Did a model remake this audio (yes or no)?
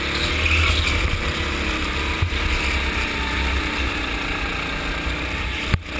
no